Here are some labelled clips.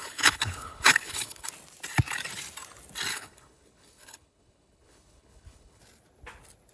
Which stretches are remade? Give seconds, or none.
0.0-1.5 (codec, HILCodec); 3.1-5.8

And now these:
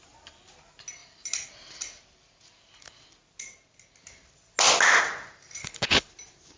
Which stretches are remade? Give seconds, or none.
5.6-6.1 (codec, HILCodec)

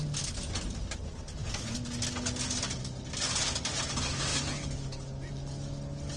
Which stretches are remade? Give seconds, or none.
none

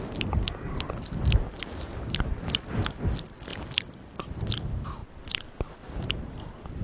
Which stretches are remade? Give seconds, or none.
none

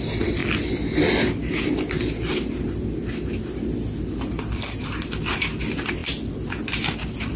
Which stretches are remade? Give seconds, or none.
none

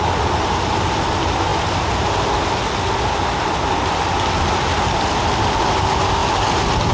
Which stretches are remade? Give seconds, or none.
none

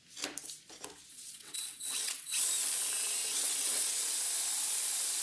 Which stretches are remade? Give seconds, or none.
1.1-2.4 (vocoder, WaveNeXt); 3.2-4.0